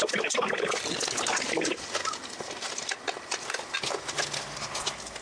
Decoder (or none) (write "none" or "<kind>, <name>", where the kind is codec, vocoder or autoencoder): none